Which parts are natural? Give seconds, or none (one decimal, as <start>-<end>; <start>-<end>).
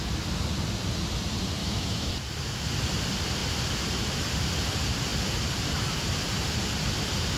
0.0-1.6; 2.1-7.4